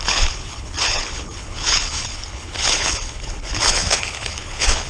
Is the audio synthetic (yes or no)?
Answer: yes